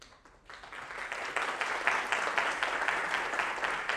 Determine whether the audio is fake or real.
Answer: real